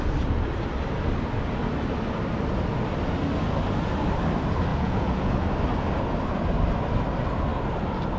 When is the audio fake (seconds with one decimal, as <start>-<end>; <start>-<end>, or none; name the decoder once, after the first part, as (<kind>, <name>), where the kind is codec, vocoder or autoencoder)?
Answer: 4.7-5.3 (vocoder, Vocos)